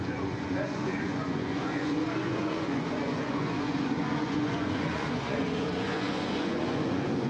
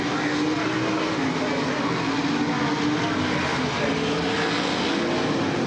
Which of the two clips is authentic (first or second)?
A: second